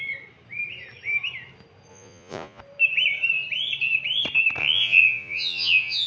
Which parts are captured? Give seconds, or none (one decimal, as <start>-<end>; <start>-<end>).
0.0-1.9; 2.6-4.6